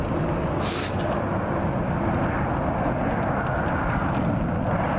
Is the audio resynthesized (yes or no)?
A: no